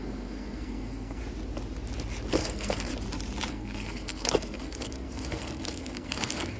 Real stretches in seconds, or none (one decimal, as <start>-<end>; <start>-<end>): 1.2-2.3; 2.9-3.5